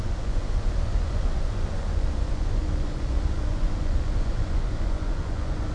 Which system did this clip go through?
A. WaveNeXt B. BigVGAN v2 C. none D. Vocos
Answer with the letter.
D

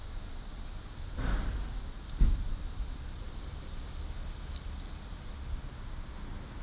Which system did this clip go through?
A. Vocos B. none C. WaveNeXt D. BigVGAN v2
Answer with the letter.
B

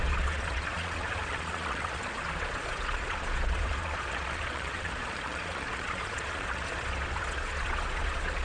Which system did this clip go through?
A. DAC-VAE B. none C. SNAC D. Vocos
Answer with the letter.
D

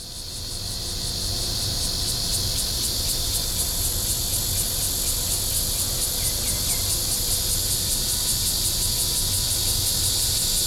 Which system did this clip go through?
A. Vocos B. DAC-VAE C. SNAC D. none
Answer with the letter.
D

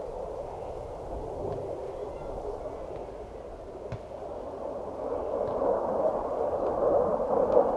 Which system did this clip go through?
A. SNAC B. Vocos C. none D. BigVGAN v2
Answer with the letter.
C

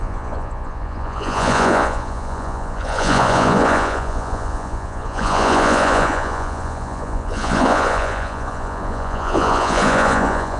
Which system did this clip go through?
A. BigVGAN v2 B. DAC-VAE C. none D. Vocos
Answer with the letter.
D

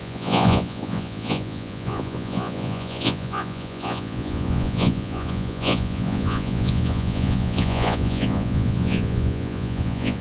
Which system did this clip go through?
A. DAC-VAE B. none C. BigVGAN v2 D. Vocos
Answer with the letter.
D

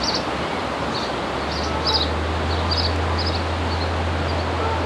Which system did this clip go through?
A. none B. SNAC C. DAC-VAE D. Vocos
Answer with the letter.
A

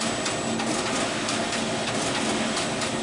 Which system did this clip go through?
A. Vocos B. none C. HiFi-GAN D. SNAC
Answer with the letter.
B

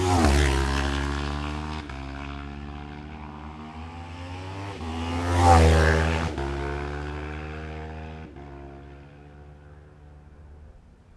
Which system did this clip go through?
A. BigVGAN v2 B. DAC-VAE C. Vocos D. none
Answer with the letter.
D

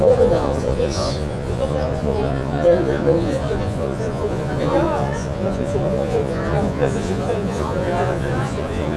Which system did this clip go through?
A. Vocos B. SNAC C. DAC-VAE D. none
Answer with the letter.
A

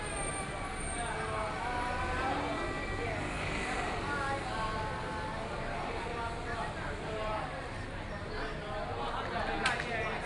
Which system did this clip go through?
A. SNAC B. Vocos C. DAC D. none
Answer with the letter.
D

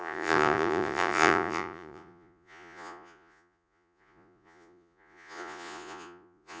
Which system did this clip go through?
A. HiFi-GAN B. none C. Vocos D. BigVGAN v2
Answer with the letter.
C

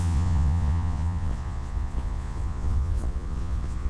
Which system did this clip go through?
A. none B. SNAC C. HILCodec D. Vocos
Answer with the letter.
D